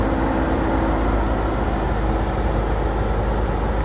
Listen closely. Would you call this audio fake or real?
real